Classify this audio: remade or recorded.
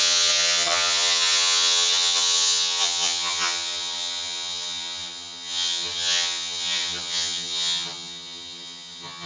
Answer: remade